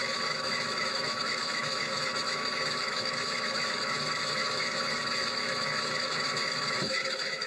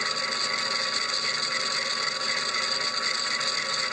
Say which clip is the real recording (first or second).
second